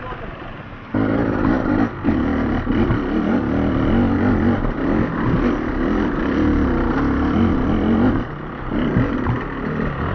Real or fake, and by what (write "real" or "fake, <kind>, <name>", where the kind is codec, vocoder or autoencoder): real